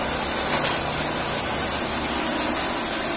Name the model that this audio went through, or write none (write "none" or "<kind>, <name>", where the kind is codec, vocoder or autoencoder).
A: none